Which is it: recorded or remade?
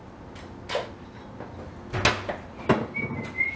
recorded